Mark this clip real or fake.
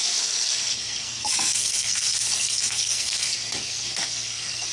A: fake